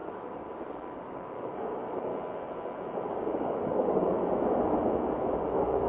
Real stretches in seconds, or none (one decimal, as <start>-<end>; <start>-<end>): 2.1-3.1; 4.2-5.4